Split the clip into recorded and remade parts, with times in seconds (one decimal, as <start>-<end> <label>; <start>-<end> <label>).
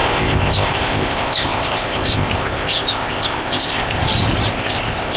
0.0-4.0 remade; 4.0-4.5 recorded; 4.5-5.2 remade